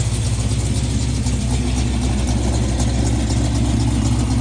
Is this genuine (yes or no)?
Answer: yes